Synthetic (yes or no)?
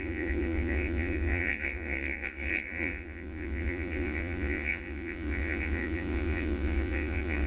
yes